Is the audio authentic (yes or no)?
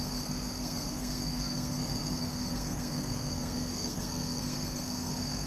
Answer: no